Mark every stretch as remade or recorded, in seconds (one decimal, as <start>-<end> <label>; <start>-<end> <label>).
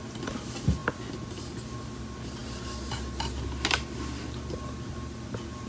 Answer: 0.0-5.7 recorded